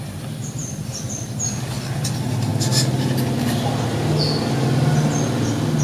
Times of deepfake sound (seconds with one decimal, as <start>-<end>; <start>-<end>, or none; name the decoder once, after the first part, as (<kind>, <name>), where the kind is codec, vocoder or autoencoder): none